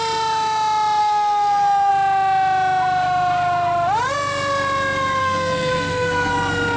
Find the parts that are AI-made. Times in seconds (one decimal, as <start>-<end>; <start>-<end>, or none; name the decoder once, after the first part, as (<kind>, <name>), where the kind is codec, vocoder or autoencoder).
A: 1.0-1.9 (codec, SNAC); 5.2-6.3